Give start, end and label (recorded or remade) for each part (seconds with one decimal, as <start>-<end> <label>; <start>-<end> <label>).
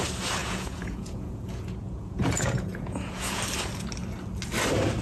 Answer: 0.0-0.4 recorded; 0.4-3.4 remade; 3.4-5.0 recorded